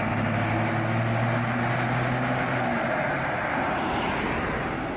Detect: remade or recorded recorded